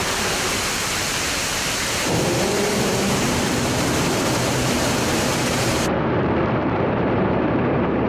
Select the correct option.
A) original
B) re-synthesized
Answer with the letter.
B